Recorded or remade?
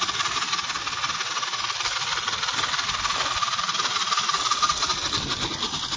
recorded